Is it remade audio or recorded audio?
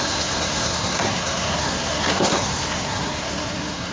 remade